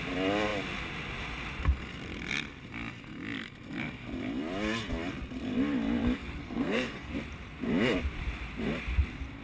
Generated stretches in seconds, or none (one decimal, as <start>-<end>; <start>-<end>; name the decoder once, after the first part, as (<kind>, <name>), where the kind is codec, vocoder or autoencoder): 6.4-7.1 (codec, SNAC)

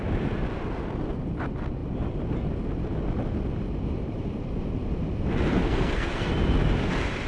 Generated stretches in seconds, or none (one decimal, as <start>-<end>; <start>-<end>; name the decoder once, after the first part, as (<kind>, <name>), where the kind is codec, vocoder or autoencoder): 5.5-6.3 (codec, SNAC)

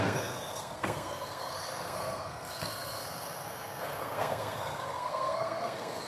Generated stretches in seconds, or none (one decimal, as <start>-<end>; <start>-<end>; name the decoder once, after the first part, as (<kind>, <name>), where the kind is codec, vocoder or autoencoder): 0.0-6.1 (codec, SNAC)